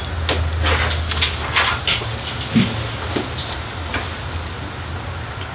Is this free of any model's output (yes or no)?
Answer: yes